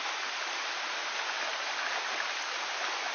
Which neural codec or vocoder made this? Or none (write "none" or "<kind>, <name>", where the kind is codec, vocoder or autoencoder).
none